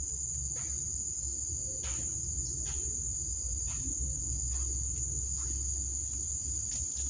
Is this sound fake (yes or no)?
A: no